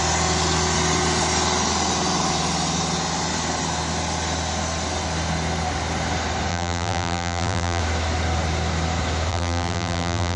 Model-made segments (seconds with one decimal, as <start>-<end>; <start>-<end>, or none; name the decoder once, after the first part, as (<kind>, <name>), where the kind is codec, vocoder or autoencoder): 6.5-7.8 (vocoder, BigVGAN v2); 9.3-10.4